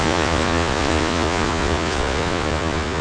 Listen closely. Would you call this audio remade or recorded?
remade